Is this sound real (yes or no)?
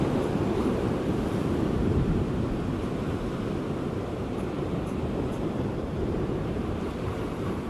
no